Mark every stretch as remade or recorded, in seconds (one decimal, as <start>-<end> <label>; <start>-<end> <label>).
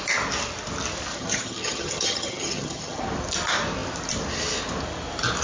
0.0-1.1 recorded; 1.1-3.0 remade; 3.0-5.4 recorded